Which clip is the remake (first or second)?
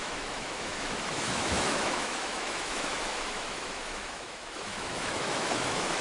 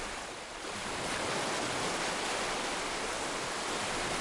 first